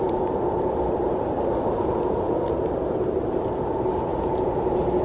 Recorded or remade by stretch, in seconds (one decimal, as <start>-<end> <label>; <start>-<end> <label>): 0.0-5.0 recorded